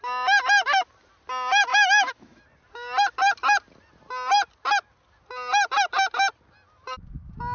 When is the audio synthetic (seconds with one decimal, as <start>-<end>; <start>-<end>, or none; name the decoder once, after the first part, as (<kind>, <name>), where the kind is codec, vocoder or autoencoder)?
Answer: 1.7-2.4 (autoencoder, DAC-VAE)